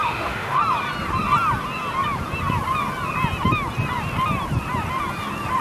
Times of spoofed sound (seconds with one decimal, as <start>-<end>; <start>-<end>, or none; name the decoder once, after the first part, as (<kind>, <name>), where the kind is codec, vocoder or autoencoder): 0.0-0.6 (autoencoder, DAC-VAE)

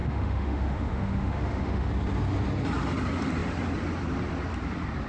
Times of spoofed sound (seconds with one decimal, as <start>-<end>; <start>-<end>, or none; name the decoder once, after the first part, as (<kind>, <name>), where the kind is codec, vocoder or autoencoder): 0.0-1.9 (autoencoder, DAC-VAE)

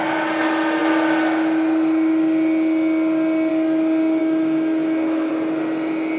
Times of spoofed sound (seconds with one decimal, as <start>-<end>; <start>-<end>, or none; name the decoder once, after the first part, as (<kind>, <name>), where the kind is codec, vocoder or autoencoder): 4.2-5.3 (autoencoder, DAC-VAE)

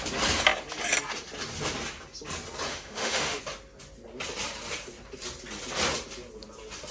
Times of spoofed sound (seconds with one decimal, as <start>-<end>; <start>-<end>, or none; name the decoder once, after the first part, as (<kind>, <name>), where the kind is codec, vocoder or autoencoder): 2.7-3.4 (autoencoder, DAC-VAE)

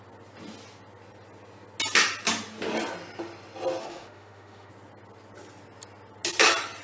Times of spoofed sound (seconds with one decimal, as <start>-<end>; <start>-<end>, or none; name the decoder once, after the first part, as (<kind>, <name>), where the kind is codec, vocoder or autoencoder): 3.8-4.7 (autoencoder, DAC-VAE)